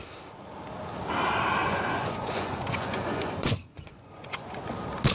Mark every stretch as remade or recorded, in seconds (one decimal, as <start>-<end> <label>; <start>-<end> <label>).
0.0-1.6 recorded; 1.6-4.6 remade; 4.6-5.1 recorded